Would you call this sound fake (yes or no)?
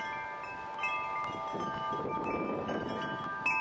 no